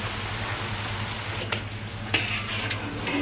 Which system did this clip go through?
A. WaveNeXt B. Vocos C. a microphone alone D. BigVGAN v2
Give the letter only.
C